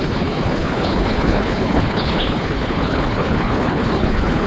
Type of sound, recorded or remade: remade